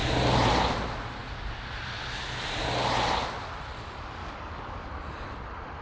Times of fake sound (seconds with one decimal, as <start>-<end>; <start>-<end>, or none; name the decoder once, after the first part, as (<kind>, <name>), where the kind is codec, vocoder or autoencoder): 4.2-4.9 (codec, DAC)